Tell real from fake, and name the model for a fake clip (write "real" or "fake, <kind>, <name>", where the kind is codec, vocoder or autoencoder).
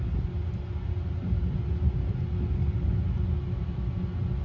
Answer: real